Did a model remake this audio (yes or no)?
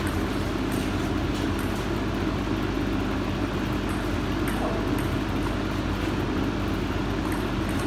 no